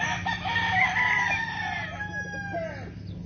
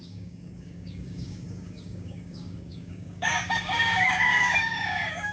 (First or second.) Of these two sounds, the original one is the first